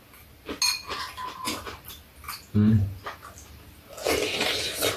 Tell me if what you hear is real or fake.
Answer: real